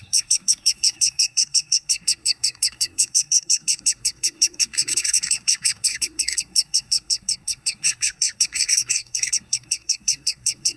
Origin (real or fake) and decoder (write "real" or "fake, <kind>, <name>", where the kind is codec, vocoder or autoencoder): fake, codec, SNAC